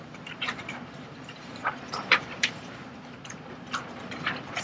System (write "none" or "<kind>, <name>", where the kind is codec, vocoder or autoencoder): vocoder, BigVGAN v2